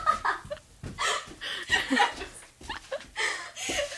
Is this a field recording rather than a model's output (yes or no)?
yes